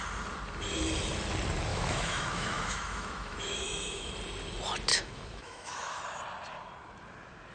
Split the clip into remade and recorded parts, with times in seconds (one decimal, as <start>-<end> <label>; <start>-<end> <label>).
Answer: 0.0-1.7 recorded; 1.7-4.1 remade; 4.1-4.9 recorded; 4.9-6.0 remade; 6.0-7.5 recorded